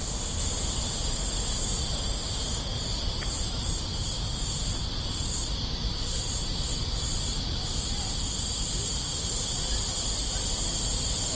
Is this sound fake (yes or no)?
no